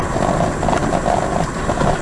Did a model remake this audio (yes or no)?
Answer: no